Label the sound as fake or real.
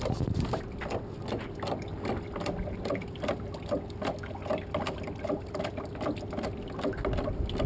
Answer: real